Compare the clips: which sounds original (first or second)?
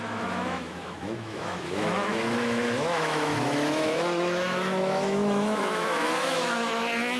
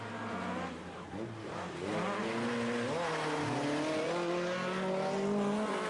second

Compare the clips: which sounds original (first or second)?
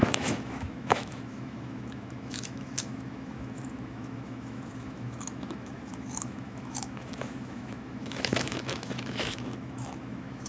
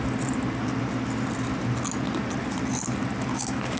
second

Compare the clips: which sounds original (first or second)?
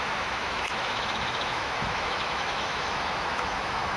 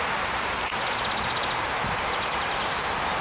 second